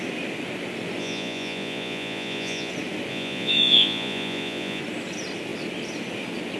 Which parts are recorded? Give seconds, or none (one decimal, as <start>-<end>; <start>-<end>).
0.0-1.0; 2.7-3.1; 4.8-6.6